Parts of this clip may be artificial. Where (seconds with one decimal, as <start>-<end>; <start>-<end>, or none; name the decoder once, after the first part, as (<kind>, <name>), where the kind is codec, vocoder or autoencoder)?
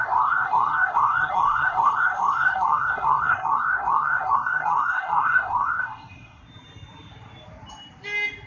0.0-6.4 (codec, SNAC)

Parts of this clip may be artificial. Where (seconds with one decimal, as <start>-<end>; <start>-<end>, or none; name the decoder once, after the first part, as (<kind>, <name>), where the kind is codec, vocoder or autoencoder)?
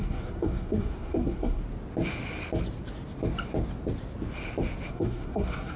0.0-1.6 (codec, SNAC); 4.9-5.8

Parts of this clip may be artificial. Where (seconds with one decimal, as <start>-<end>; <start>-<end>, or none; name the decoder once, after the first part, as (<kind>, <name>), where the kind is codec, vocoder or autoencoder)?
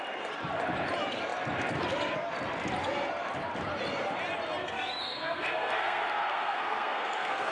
4.6-7.5 (codec, SNAC)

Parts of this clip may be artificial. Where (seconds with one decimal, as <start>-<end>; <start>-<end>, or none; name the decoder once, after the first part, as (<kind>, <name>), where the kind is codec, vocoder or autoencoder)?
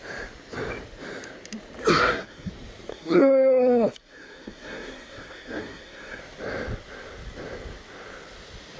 1.8-2.5 (codec, SNAC); 2.9-6.2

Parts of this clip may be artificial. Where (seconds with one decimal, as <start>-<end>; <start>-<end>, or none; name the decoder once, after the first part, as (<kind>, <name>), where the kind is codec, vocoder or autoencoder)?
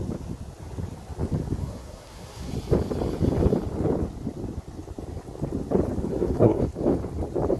1.6-2.5 (codec, SNAC); 6.1-6.6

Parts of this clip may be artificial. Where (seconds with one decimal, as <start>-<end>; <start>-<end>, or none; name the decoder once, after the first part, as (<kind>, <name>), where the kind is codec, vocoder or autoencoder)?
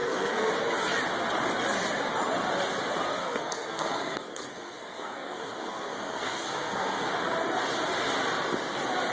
0.0-0.5 (codec, SNAC); 3.2-7.1